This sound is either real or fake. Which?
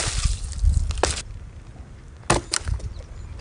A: real